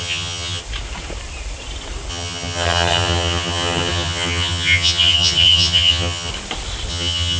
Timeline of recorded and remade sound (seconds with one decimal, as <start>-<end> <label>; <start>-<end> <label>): 0.0-0.6 remade; 0.6-2.1 recorded; 2.1-6.3 remade; 6.3-6.9 recorded; 6.9-7.4 remade